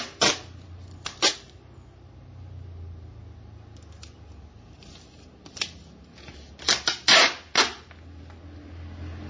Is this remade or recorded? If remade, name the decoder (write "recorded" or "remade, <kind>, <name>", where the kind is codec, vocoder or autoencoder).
recorded